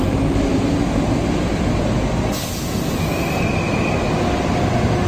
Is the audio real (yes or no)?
yes